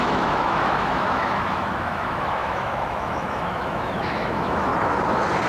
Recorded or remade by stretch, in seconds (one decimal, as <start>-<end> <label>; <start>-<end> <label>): 0.0-4.7 remade; 4.7-5.5 recorded